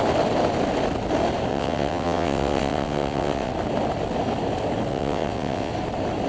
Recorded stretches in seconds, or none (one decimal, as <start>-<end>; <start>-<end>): 0.0-1.5; 3.5-4.9; 5.7-6.3